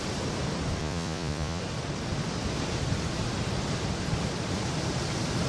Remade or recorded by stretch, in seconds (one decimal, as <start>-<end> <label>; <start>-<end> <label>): 0.0-0.8 recorded; 0.8-1.6 remade; 1.6-5.5 recorded